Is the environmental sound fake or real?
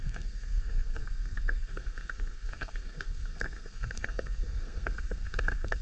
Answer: fake